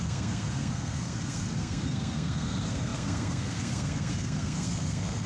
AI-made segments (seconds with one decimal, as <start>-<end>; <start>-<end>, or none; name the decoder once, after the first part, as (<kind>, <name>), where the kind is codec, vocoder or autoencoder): 0.0-5.3 (codec, SNAC)